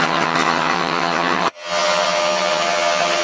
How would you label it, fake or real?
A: fake